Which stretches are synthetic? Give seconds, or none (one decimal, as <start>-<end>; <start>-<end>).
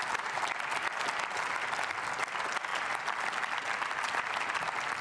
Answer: 0.0-2.7; 3.3-5.0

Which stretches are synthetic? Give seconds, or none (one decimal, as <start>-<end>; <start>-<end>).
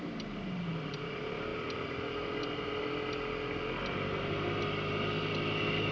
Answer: none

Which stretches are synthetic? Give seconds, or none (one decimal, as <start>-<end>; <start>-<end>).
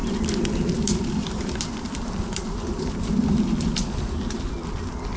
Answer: 0.0-3.1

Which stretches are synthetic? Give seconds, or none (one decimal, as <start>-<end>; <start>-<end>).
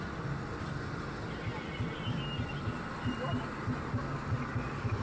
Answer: none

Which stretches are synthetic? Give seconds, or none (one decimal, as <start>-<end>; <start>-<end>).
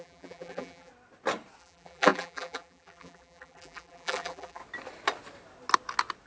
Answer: 0.0-0.9; 1.6-4.6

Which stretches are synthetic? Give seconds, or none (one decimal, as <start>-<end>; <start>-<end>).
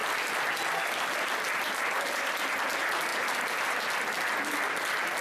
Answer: 3.1-3.8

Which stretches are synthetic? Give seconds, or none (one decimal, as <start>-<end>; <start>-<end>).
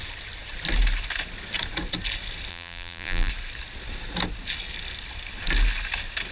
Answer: 2.5-3.3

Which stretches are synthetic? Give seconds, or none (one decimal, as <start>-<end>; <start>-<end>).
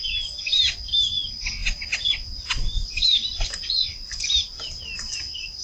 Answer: none